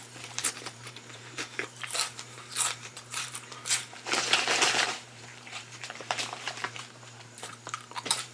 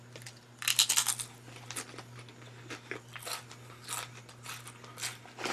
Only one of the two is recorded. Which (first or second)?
second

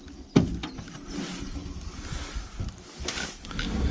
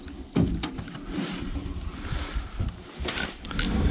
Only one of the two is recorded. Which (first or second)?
first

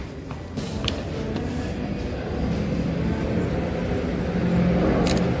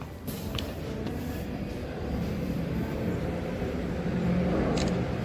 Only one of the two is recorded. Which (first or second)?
first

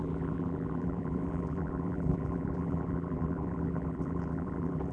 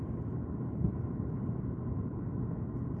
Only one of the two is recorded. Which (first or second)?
second